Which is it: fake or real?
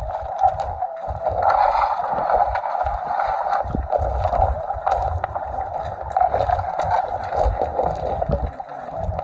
real